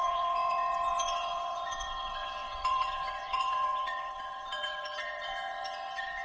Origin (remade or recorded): remade